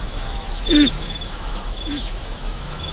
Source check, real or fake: fake